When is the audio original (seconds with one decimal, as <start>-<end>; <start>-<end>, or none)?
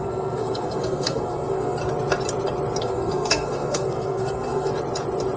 1.8-2.8; 4.7-5.4